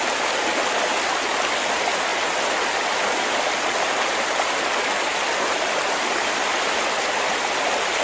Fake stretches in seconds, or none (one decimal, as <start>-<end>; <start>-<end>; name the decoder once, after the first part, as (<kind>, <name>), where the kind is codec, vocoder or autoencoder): none